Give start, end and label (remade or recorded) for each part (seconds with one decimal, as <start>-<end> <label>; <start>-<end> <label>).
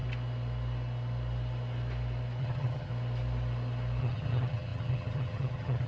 0.0-2.4 recorded; 2.4-2.9 remade; 2.9-4.0 recorded; 4.0-5.9 remade